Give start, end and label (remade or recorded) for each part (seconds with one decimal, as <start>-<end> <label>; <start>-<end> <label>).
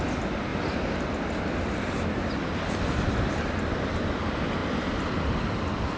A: 0.0-0.5 recorded; 0.5-3.9 remade; 3.9-6.0 recorded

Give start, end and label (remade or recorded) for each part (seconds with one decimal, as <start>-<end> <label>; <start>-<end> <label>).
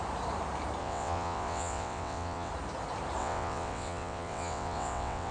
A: 0.0-0.8 recorded; 0.8-2.5 remade; 2.5-3.2 recorded; 3.2-5.3 remade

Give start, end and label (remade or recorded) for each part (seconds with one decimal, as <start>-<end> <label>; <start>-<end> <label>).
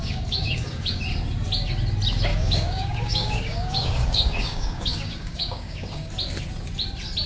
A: 0.0-1.0 remade; 1.0-2.3 recorded; 2.3-6.1 remade; 6.1-7.3 recorded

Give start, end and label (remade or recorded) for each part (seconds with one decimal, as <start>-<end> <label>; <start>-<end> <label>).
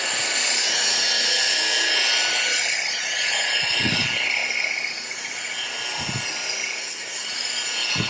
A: 0.0-6.8 recorded; 6.8-7.3 remade; 7.3-8.1 recorded